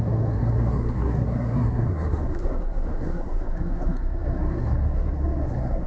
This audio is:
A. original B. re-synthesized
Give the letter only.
B